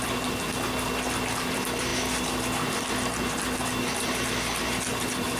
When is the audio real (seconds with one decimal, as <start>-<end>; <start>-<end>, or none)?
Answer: 0.0-5.4